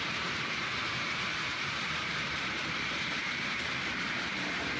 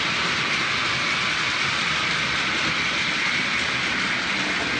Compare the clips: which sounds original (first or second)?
second